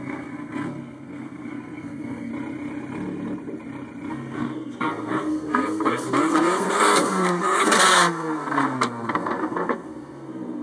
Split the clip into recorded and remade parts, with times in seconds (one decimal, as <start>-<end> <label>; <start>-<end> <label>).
0.0-2.3 remade; 2.3-4.1 recorded; 4.1-10.6 remade